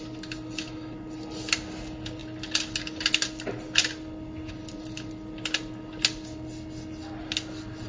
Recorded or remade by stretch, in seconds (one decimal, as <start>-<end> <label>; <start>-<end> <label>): 0.0-7.9 recorded

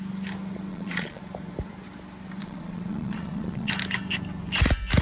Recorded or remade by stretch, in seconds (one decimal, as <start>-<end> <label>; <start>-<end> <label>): 0.0-0.7 recorded; 0.7-1.2 remade; 1.2-2.4 recorded; 2.4-3.7 remade; 3.7-5.0 recorded

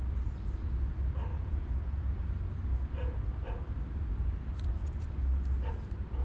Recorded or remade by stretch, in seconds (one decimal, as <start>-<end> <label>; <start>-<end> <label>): 0.0-1.3 recorded; 1.3-2.2 remade; 2.2-6.2 recorded

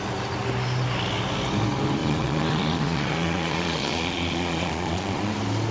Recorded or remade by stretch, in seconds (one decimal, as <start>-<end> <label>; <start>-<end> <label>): 0.0-2.0 recorded; 2.0-5.3 remade; 5.3-5.7 recorded